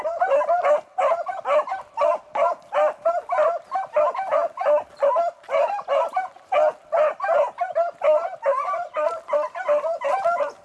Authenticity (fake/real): real